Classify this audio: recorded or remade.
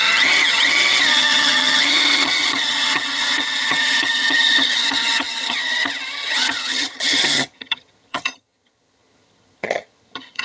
remade